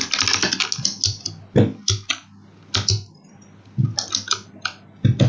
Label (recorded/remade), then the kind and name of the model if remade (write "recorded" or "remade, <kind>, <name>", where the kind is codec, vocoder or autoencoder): recorded